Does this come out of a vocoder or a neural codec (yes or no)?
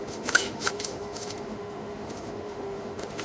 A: yes